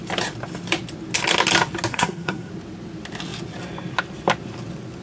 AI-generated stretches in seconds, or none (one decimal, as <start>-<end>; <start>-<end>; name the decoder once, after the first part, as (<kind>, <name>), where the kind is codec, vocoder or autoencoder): 1.9-2.5 (codec, SNAC)